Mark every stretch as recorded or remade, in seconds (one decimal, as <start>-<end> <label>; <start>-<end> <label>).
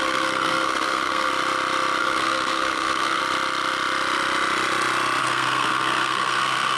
0.0-1.3 remade; 1.3-2.0 recorded; 2.0-3.2 remade; 3.2-5.2 recorded; 5.2-6.8 remade